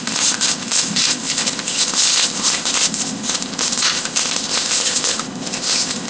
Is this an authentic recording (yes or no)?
no